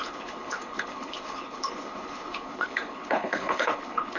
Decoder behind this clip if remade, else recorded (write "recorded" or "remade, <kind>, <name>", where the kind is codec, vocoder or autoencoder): remade, codec, HILCodec